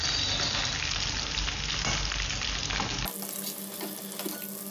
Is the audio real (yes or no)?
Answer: yes